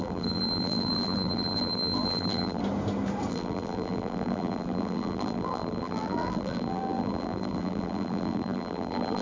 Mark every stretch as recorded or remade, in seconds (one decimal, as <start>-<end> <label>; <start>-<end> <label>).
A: 0.0-2.6 remade; 2.6-3.3 recorded; 3.3-9.2 remade